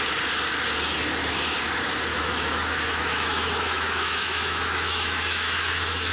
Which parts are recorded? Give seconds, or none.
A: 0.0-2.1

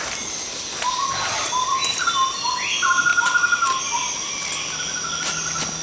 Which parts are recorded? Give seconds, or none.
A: 0.0-5.8

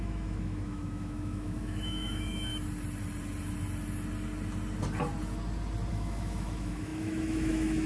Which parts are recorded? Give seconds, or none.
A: 2.5-5.9

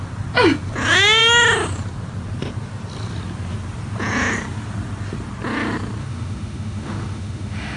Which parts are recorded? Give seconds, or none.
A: 0.0-6.0

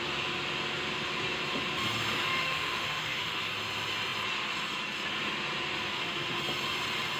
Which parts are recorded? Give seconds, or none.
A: 0.0-2.3; 3.4-5.9; 6.4-7.2

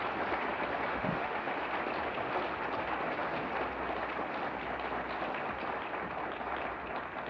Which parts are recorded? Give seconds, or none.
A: 0.0-0.9; 1.5-7.3

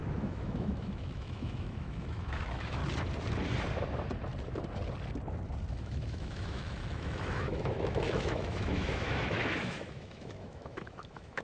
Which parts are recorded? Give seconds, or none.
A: 2.8-5.7

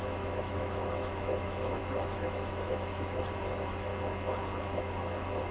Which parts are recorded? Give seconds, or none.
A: 3.9-4.6